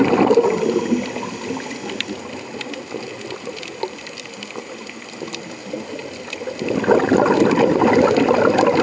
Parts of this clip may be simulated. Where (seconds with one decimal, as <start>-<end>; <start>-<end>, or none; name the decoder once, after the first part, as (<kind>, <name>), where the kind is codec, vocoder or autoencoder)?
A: none